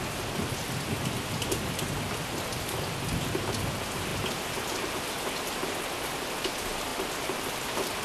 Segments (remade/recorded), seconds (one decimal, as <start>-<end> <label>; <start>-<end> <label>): 0.0-6.9 recorded; 6.9-8.0 remade